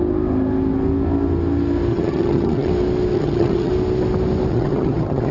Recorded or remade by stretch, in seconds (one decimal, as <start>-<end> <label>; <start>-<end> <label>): 0.0-1.9 recorded; 1.9-2.7 remade; 2.7-3.1 recorded; 3.1-3.7 remade; 3.7-4.5 recorded; 4.5-5.3 remade